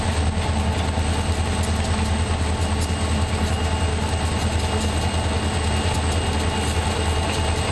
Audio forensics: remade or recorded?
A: recorded